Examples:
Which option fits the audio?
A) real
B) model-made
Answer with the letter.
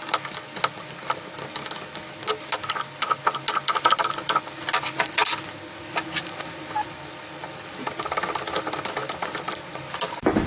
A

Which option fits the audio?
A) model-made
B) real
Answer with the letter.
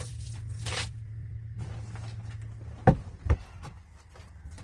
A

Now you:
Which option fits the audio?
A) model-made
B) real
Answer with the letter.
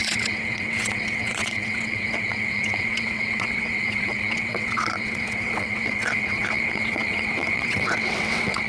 A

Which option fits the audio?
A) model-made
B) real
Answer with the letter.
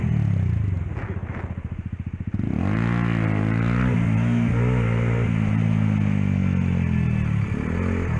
B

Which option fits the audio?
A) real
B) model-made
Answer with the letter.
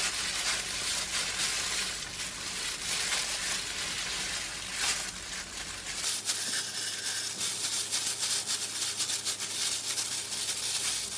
A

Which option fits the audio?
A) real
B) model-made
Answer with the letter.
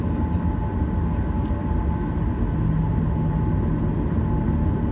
A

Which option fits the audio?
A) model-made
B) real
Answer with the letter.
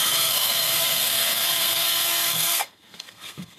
A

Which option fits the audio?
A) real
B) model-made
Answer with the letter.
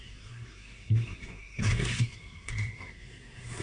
B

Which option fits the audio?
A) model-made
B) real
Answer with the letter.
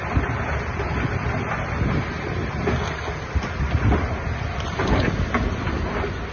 B